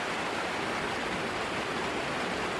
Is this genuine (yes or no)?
yes